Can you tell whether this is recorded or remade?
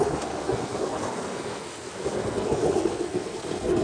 remade